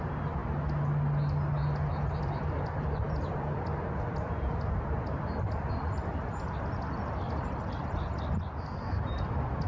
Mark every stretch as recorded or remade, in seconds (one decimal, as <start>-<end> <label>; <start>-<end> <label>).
0.0-0.4 remade; 0.4-2.2 recorded; 2.2-9.7 remade